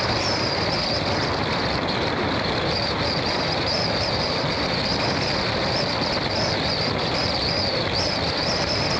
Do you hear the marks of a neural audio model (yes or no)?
yes